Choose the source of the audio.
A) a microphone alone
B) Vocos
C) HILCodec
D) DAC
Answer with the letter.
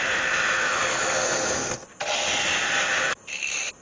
A